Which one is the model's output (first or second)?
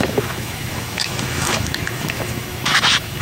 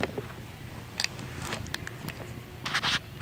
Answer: first